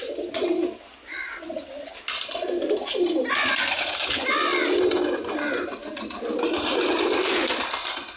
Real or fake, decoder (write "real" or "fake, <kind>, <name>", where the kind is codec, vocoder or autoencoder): real